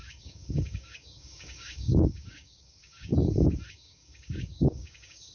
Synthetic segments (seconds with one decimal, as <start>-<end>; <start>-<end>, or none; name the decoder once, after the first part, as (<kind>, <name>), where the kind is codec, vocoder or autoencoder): 0.0-3.1 (codec, DAC); 3.7-5.3